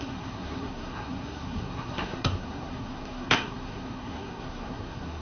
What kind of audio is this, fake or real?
fake